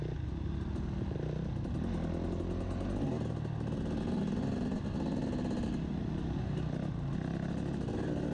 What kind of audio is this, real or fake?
real